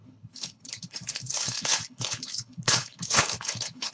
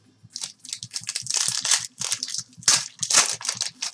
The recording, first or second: second